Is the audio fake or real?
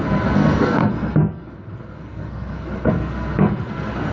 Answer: fake